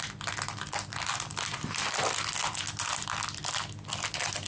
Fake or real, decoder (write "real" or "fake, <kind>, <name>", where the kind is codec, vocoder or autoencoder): real